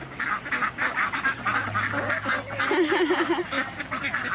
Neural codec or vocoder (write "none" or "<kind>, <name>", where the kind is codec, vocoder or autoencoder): none